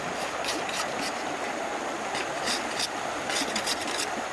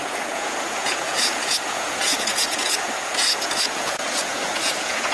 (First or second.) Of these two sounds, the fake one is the second